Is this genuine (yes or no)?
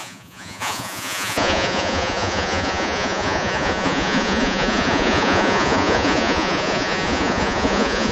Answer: no